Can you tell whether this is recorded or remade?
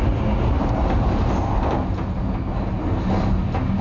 recorded